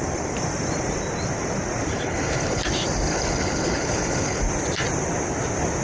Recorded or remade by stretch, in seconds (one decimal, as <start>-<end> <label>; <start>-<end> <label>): 0.0-1.9 recorded; 1.9-2.6 remade; 2.6-3.1 recorded; 3.1-4.4 remade; 4.4-5.8 recorded